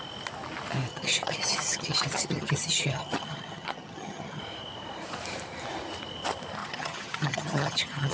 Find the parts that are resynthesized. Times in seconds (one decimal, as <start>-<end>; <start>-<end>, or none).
0.9-4.4; 6.6-8.1